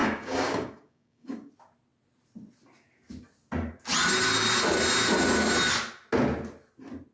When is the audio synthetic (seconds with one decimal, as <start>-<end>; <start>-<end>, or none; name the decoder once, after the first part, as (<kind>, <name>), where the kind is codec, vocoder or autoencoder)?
0.0-1.5 (codec, DAC)